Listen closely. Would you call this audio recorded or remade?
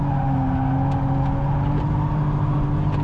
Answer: recorded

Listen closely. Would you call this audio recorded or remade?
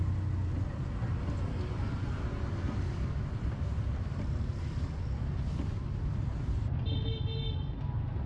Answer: recorded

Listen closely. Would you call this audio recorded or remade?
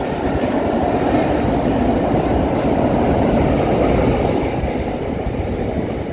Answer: recorded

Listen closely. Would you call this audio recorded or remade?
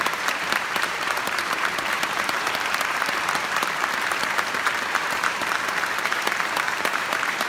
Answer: remade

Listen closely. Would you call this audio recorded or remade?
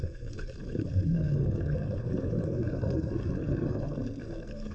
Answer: remade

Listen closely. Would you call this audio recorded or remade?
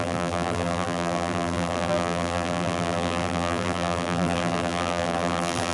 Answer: remade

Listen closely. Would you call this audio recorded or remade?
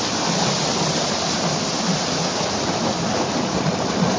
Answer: recorded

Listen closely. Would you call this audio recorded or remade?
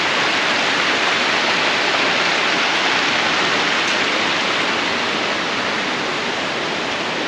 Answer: recorded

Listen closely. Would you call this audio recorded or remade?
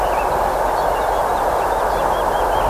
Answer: recorded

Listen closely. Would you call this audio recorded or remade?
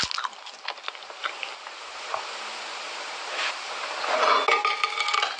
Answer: recorded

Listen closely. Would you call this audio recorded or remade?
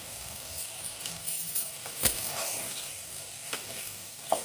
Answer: remade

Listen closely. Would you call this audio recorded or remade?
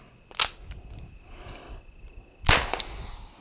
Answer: recorded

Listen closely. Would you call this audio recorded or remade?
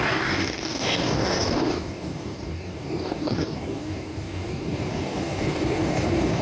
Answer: remade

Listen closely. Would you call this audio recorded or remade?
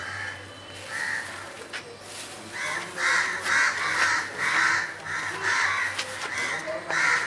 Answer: recorded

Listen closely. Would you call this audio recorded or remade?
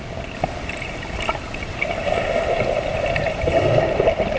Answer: recorded